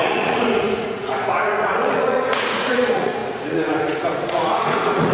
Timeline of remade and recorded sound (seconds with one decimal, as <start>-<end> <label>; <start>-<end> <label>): 0.0-5.1 remade